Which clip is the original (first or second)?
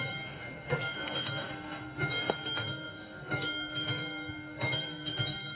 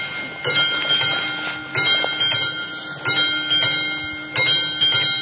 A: second